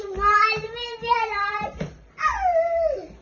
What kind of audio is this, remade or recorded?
remade